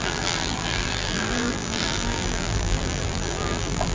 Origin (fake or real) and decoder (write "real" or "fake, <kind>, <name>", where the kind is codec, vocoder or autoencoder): fake, vocoder, BigVGAN v2